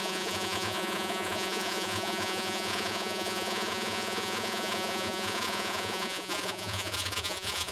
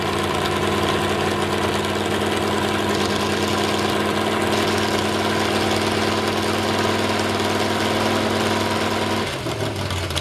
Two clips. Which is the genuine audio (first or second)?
second